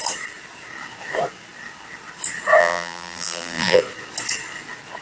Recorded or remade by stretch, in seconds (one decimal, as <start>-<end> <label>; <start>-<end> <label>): 0.0-2.6 recorded; 2.6-3.8 remade; 3.8-5.0 recorded